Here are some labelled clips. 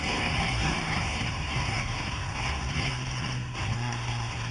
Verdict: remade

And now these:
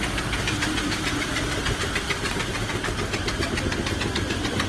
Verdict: recorded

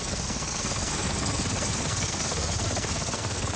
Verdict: remade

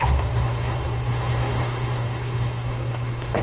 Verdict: remade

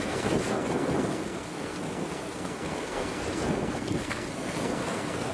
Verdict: remade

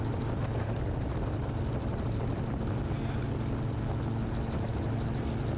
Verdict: recorded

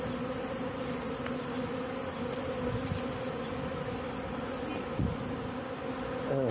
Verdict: recorded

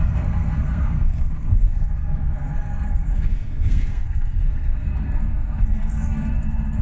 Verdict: remade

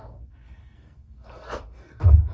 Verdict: remade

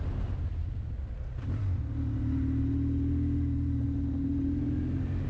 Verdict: recorded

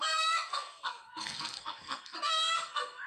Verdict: remade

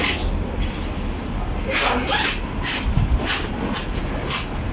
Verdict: recorded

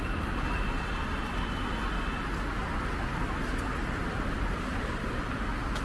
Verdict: recorded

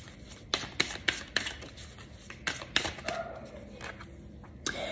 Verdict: recorded